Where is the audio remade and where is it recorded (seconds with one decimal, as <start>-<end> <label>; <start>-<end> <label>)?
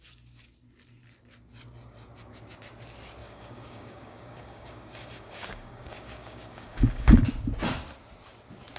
0.0-3.2 recorded; 3.2-7.2 remade; 7.2-8.8 recorded